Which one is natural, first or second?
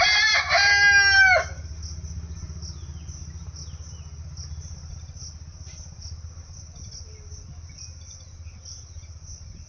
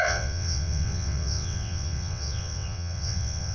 first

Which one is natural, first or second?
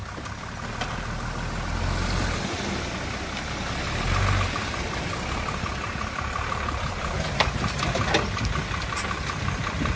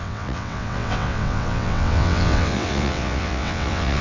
first